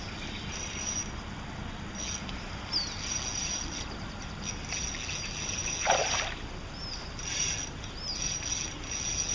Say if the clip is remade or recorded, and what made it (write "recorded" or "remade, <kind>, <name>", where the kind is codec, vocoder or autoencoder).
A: recorded